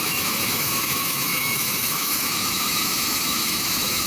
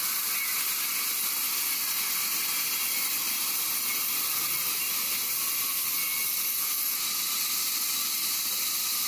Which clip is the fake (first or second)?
first